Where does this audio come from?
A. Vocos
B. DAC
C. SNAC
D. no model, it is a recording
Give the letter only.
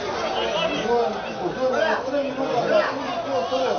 D